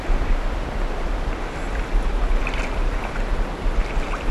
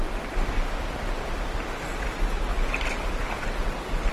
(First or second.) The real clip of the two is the first